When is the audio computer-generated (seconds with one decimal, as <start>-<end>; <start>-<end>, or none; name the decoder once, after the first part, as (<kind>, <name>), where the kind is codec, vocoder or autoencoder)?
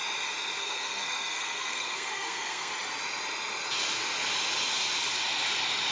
0.6-2.7 (codec, SNAC)